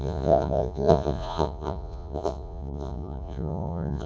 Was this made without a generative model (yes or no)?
no